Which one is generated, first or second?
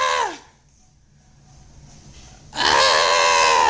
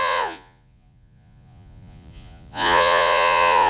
second